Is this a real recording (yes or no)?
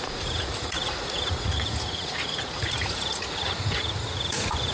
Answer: no